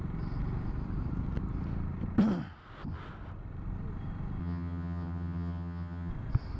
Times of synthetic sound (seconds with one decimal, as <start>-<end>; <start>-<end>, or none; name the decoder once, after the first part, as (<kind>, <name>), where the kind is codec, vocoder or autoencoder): 4.4-6.1 (vocoder, HiFi-GAN)